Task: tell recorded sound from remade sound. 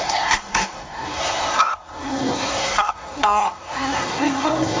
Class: remade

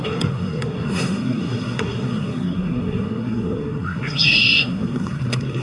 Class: remade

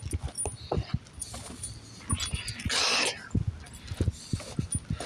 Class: recorded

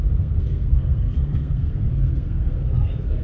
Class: remade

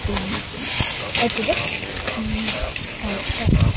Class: recorded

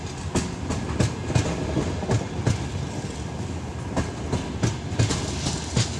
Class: recorded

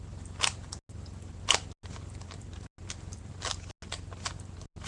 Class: recorded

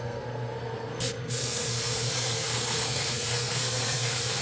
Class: remade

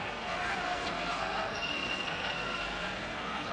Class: remade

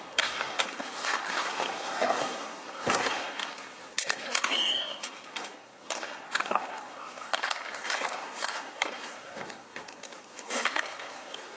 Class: remade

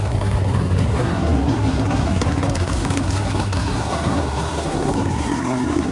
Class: remade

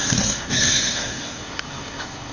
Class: remade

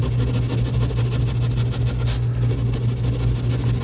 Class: recorded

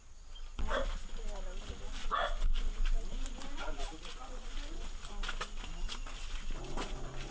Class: recorded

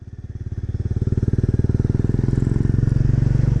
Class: recorded